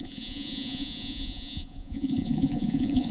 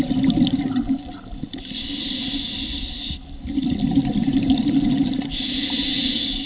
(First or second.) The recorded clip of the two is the second